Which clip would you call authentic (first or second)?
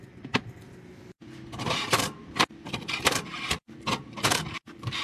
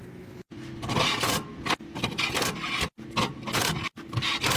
second